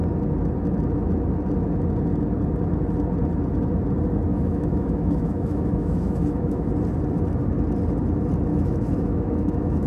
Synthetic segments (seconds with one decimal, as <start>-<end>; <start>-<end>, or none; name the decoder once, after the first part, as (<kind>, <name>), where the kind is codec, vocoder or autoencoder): 4.3-6.7 (autoencoder, DAC-VAE); 8.5-9.9